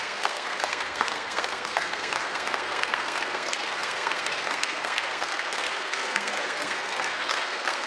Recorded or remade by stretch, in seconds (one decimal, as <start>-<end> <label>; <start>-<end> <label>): 0.0-7.9 remade